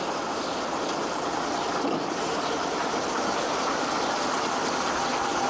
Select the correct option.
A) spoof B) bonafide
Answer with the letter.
B